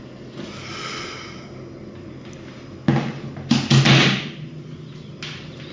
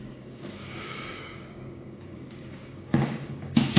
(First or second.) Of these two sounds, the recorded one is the first